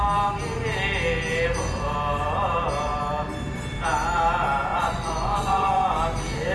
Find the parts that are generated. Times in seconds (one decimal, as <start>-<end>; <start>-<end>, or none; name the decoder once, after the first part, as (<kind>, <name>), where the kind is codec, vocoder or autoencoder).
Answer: 4.7-6.0 (vocoder, Vocos)